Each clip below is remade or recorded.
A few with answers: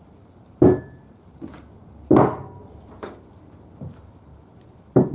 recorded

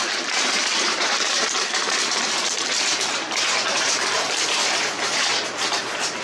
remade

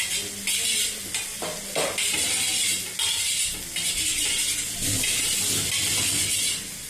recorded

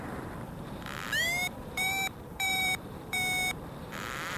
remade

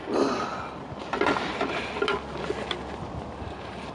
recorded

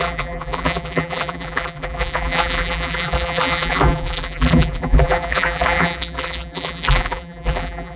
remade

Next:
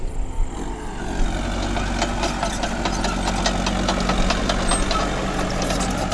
recorded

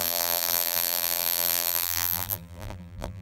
remade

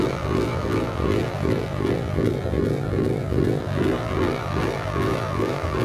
remade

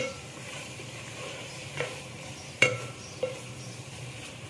remade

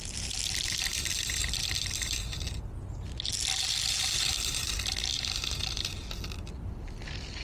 recorded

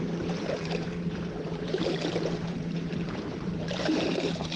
remade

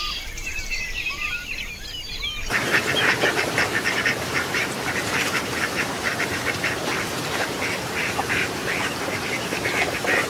remade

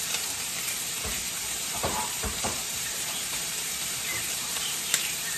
remade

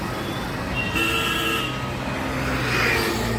recorded